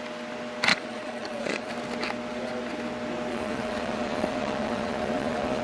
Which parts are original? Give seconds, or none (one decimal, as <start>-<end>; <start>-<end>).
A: 0.0-0.7; 1.7-3.3